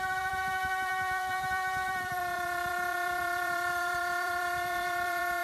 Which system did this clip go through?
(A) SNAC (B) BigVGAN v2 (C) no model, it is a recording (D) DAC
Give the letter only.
B